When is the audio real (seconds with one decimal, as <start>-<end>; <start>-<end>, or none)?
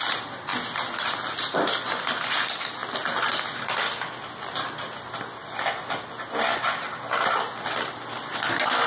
0.0-8.9